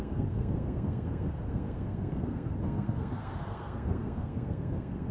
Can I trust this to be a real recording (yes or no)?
no